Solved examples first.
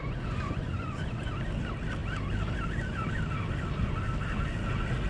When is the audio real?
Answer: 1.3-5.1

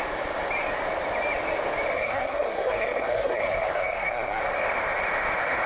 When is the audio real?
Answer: 0.0-1.9; 4.4-5.7

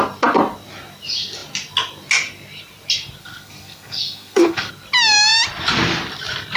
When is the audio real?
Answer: 0.0-3.2; 4.7-6.6

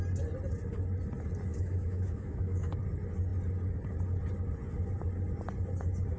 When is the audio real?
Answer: 0.0-1.5; 2.8-6.2

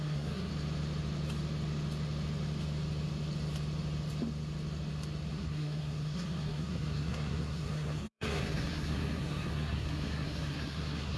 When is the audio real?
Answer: 0.5-5.3